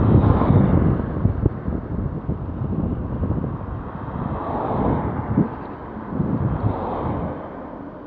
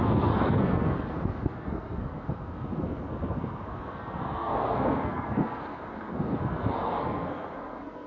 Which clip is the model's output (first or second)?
second